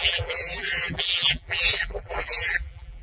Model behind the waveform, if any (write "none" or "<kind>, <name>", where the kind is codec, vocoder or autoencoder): vocoder, BigVGAN v2